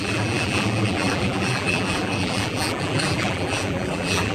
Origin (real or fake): fake